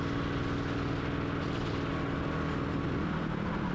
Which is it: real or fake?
real